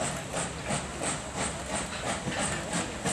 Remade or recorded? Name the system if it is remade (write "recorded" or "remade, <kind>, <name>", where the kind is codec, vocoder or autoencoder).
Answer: recorded